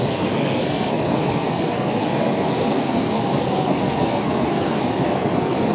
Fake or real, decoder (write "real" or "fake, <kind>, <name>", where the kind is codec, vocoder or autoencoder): fake, codec, SNAC